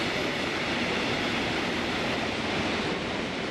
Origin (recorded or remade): recorded